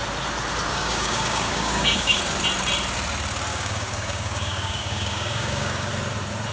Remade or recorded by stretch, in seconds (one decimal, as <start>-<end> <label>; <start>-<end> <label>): 0.0-0.7 recorded; 0.7-2.2 remade; 2.2-3.5 recorded; 3.5-5.9 remade; 5.9-6.5 recorded